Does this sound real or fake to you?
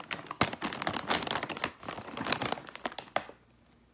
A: real